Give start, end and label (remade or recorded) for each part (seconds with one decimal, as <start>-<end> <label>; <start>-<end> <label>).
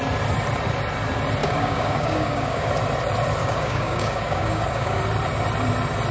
0.0-1.4 recorded; 1.4-2.7 remade; 2.7-3.4 recorded; 3.4-5.0 remade; 5.0-6.1 recorded